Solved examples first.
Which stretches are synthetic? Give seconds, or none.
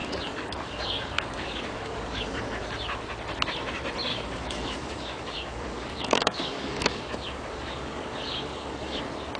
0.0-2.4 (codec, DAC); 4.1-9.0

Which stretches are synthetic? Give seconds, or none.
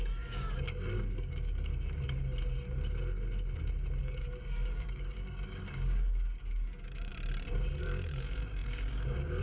0.0-1.7 (codec, DAC); 4.0-7.1; 7.8-9.4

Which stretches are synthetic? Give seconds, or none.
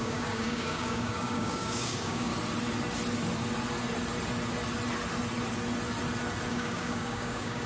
0.0-2.3 (codec, DAC); 6.5-7.7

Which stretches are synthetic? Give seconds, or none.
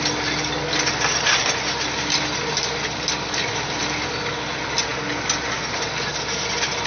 none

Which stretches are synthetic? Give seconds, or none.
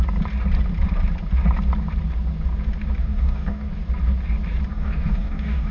3.0-3.7 (codec, DAC); 4.7-5.7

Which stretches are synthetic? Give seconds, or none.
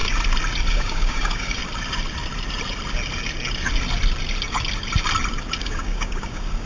0.7-1.6 (codec, DAC); 5.6-6.7